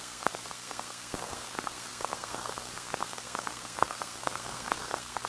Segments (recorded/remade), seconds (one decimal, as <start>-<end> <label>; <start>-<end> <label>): 0.0-5.3 remade